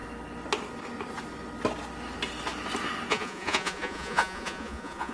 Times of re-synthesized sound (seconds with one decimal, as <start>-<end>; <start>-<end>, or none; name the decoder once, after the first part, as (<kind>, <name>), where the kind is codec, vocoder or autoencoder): 3.1-5.1 (vocoder, Vocos)